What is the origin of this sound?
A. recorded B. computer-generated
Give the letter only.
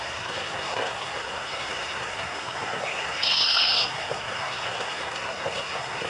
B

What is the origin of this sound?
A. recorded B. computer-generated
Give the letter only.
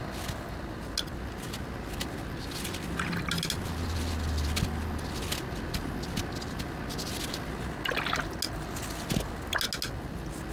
A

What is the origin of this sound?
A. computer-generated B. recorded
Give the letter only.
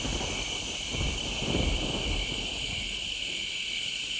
B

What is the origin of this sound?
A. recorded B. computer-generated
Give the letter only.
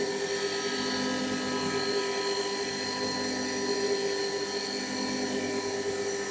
A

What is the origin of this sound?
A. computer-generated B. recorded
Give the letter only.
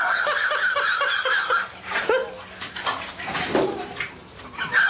B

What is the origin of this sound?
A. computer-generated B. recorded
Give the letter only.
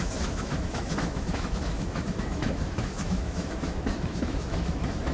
A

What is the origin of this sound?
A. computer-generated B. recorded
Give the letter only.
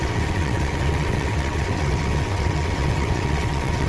A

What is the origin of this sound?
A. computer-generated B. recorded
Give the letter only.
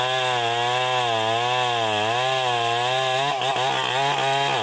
B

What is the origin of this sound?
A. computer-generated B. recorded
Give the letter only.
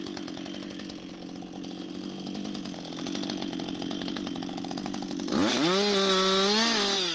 B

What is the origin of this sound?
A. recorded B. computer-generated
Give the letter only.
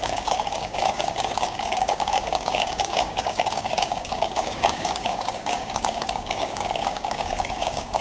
B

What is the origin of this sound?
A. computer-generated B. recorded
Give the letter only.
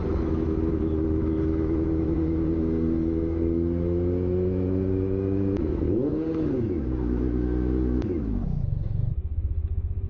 A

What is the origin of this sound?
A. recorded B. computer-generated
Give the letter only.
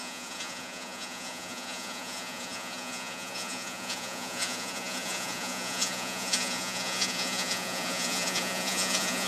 B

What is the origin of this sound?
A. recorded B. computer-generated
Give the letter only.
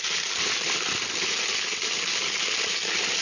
A